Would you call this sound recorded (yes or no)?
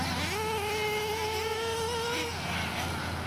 yes